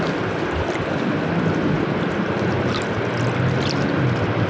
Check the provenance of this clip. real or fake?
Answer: real